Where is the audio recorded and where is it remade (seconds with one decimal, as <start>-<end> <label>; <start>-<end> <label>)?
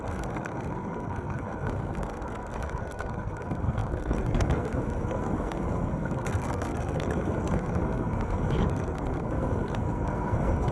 0.0-10.7 remade